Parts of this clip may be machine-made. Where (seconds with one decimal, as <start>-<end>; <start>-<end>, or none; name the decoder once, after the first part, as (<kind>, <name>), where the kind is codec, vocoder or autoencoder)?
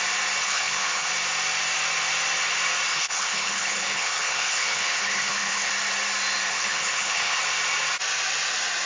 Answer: 0.4-1.1 (codec, HILCodec); 2.9-5.7; 6.5-7.4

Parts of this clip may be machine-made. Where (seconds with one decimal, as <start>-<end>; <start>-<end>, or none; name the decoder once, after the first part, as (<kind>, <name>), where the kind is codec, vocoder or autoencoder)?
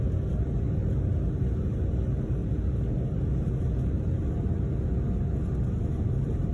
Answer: 0.0-6.5 (vocoder, BigVGAN v2)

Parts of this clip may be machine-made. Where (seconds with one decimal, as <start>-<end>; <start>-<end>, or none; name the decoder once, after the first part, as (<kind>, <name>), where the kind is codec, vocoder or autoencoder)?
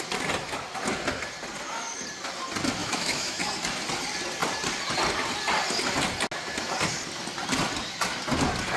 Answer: 2.8-3.4 (autoencoder, DAC-VAE)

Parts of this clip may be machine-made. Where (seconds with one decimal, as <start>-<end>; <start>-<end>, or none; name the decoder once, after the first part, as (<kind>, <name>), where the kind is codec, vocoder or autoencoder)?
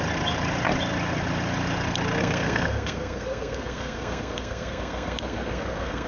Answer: 2.2-6.1 (codec, SNAC)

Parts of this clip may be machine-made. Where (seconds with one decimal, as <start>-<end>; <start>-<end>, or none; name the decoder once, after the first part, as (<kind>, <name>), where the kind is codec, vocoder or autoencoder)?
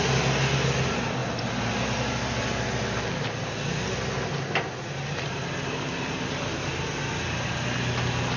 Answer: none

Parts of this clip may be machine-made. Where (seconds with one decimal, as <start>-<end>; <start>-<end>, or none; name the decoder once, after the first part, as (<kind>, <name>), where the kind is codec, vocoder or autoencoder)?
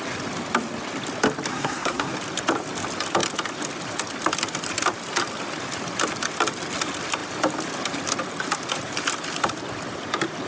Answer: 1.5-2.1 (codec, SNAC)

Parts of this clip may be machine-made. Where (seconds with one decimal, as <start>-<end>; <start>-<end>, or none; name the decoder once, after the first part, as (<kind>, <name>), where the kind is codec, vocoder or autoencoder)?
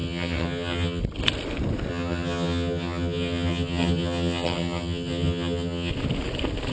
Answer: 0.0-1.0 (vocoder, HiFi-GAN); 1.9-5.9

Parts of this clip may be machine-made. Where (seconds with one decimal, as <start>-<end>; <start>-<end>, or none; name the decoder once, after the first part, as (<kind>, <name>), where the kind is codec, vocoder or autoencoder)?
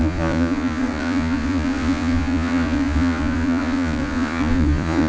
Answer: 0.0-5.1 (vocoder, Vocos)